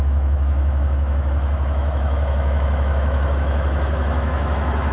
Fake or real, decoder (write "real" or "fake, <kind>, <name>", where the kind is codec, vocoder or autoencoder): fake, autoencoder, DAC-VAE